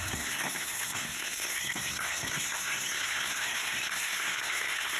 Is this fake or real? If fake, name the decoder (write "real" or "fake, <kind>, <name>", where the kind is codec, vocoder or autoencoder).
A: fake, codec, SNAC